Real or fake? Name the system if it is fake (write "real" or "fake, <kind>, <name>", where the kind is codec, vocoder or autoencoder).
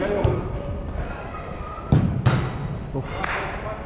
real